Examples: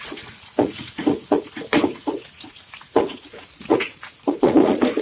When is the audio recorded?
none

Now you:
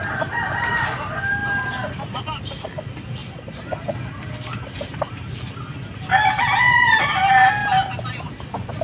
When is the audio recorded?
0.0-7.6; 8.2-8.8

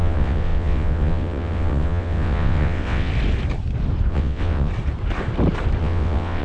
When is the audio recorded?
3.1-4.1; 4.7-5.8

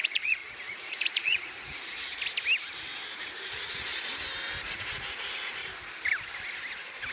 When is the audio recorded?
2.1-3.2; 3.9-4.6; 5.6-7.1

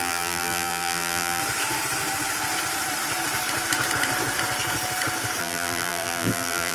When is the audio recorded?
1.4-5.4

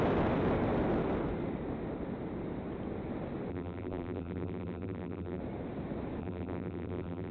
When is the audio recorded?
0.0-3.5; 5.4-6.2

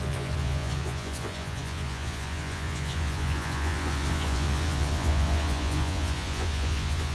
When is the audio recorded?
none

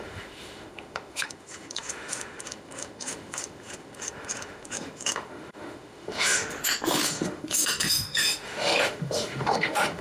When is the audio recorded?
none